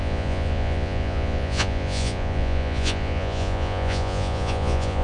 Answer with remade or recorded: remade